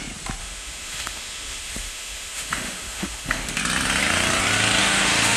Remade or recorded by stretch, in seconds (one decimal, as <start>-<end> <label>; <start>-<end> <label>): 0.0-0.4 recorded; 0.4-3.6 remade; 3.6-4.8 recorded; 4.8-5.4 remade